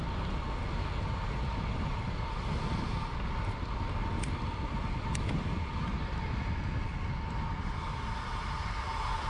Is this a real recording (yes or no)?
yes